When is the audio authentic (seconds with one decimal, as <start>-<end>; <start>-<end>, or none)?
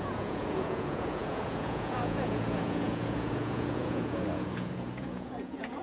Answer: none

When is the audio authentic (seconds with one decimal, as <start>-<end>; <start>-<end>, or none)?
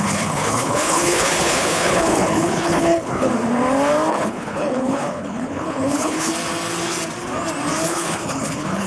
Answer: 3.3-4.1; 6.3-7.8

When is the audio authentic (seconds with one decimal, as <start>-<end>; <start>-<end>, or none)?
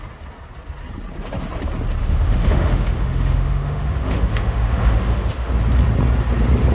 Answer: 0.0-2.0; 5.5-6.7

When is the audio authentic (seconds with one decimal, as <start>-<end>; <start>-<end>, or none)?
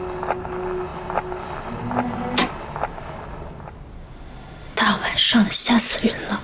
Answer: 0.0-6.4